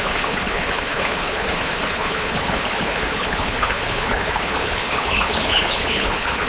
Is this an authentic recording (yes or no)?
no